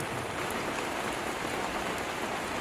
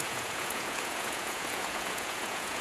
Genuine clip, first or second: first